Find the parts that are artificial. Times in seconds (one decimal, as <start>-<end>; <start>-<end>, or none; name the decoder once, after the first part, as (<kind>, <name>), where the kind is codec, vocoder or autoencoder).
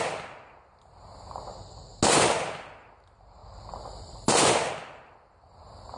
3.4-4.7 (vocoder, BigVGAN v2)